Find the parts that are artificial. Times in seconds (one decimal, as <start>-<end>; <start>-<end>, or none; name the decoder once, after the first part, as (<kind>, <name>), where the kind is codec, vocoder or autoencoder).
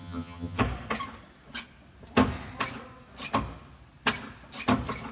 0.0-0.6 (vocoder, HiFi-GAN)